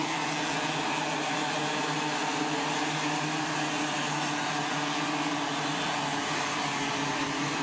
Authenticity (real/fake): real